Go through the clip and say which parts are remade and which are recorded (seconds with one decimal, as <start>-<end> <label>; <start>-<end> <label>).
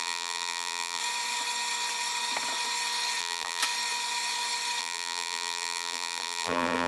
0.0-1.0 remade; 1.0-3.2 recorded; 3.2-3.6 remade; 3.6-4.8 recorded; 4.8-6.9 remade